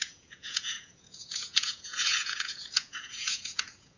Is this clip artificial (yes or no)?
yes